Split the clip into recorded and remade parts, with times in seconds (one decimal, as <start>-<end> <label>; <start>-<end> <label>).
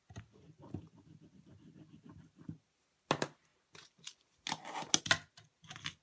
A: 0.0-6.0 recorded